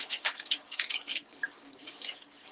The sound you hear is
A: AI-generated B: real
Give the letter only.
A